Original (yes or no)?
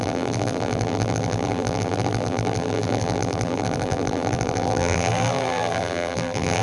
no